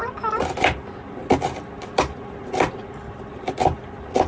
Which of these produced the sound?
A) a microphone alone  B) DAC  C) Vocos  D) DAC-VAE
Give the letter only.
A